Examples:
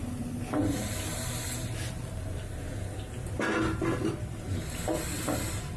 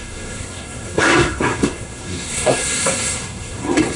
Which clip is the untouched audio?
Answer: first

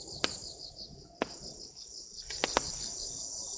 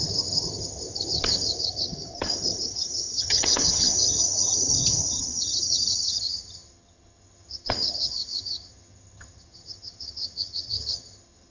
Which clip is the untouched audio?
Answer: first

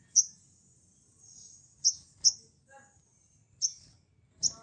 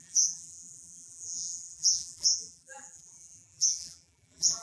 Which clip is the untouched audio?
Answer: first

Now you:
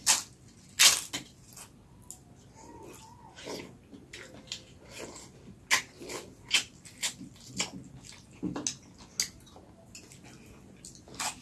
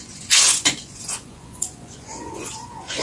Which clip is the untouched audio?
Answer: first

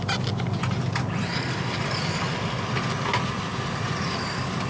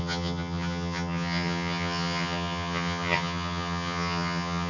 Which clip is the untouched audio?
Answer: first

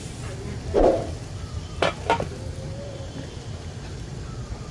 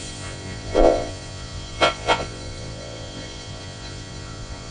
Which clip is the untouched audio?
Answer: first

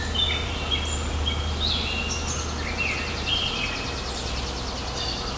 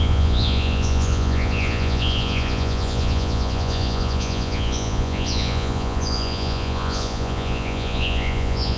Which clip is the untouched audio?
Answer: first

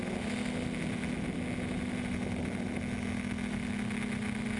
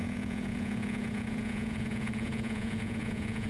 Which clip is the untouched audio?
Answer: first